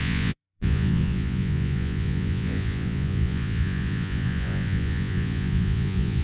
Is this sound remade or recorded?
remade